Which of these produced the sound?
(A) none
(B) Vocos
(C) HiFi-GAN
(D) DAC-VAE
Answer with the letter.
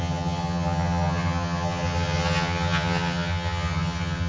C